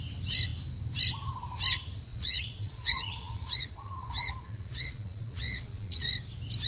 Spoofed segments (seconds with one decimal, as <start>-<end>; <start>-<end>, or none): 2.1-6.1